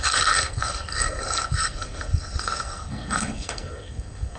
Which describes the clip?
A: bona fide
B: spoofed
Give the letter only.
B